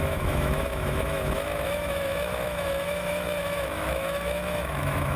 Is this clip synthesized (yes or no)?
yes